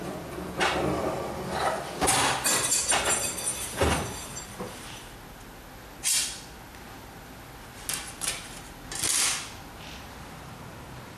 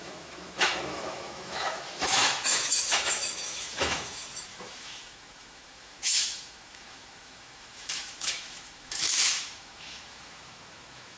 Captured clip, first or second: first